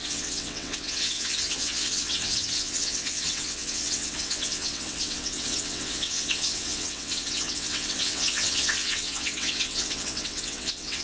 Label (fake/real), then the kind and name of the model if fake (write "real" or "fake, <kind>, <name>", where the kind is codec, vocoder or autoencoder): fake, vocoder, WaveNeXt